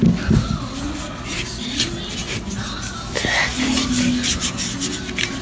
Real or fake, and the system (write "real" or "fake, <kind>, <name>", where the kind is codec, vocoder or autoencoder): real